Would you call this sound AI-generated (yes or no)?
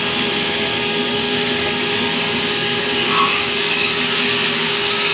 yes